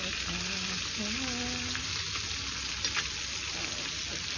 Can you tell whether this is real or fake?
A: real